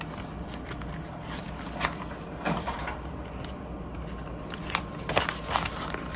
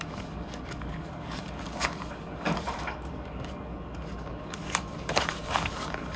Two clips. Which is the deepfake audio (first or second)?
second